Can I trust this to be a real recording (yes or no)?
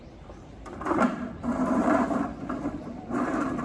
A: no